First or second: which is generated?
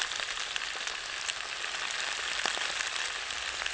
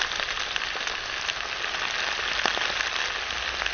first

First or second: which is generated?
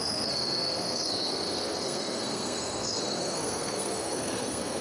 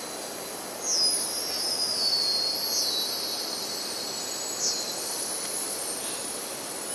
first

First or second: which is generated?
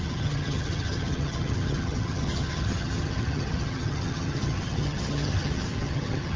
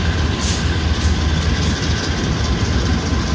first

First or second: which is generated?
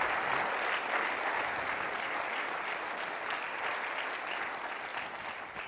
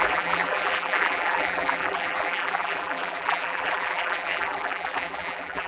second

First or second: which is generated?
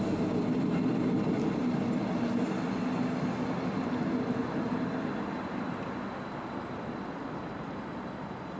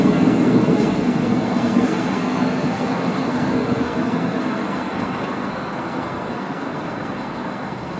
second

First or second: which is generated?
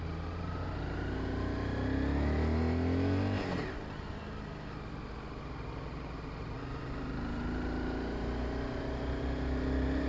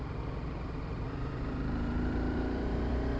second